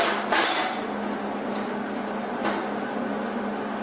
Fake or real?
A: real